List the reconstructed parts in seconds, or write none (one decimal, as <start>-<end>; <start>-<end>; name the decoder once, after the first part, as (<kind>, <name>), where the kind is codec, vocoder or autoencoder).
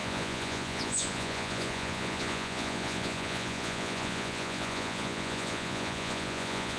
0.0-6.8 (vocoder, Vocos)